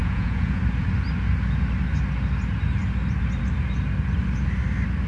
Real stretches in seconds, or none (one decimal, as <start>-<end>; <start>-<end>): 0.6-5.1